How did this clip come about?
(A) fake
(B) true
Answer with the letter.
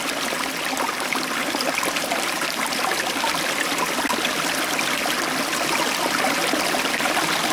B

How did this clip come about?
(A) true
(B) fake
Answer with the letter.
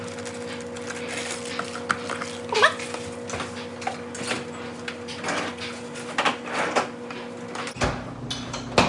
A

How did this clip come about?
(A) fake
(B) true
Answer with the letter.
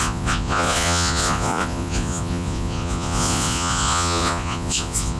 A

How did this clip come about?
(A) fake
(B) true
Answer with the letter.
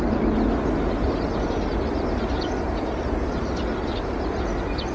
B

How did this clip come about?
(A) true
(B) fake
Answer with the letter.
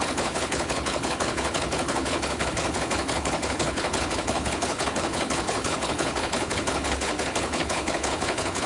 B